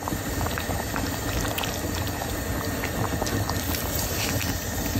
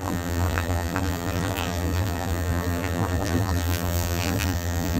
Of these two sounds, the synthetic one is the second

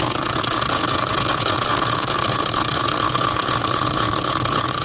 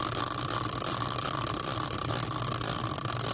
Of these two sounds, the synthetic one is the first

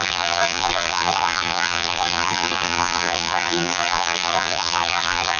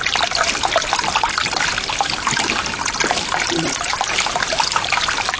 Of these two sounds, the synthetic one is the first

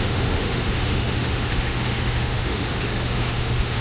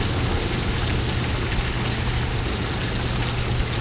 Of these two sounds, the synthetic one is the first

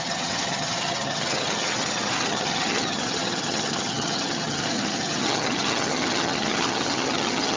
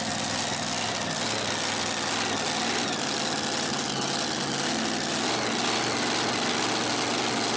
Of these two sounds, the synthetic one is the first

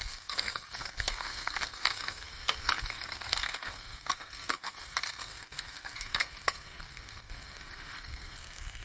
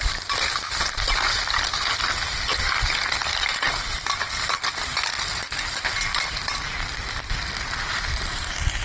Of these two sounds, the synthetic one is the first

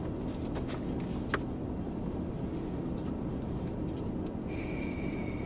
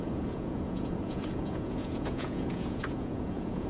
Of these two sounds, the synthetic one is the second